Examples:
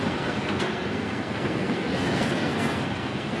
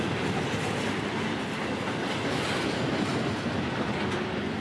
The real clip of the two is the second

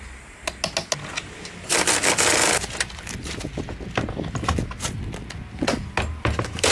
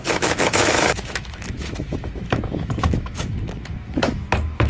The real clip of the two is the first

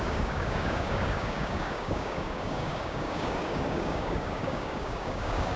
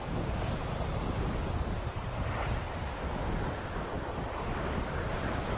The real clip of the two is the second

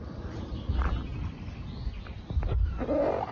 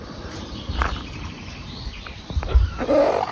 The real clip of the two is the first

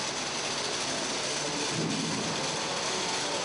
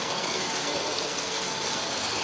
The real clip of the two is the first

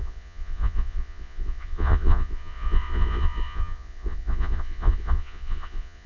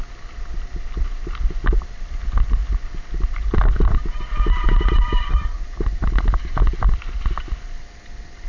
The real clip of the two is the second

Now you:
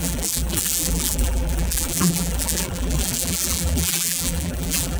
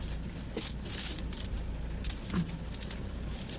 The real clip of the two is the second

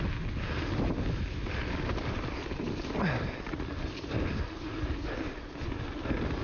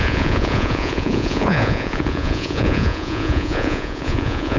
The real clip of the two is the first